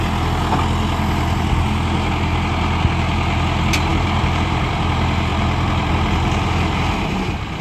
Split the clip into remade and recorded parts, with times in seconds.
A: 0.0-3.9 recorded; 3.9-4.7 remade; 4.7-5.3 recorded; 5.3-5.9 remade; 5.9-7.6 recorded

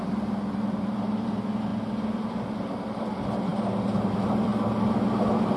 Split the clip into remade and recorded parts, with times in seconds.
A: 0.0-1.7 remade; 1.7-3.0 recorded; 3.0-4.5 remade; 4.5-5.6 recorded

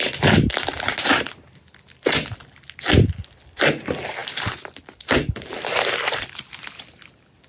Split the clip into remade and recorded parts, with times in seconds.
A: 0.0-4.2 recorded; 4.2-6.6 remade; 6.6-7.5 recorded